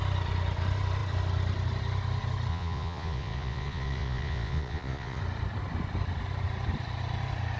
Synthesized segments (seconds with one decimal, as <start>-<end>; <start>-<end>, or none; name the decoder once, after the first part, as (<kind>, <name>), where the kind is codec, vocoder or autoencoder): 2.5-5.2 (vocoder, Vocos)